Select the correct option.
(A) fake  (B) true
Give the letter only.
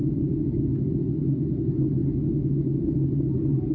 B